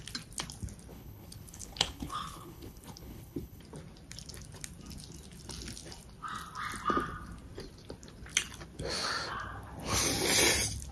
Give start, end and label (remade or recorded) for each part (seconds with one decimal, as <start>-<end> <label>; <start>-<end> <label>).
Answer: 0.0-0.9 recorded; 0.9-3.6 remade; 3.6-10.9 recorded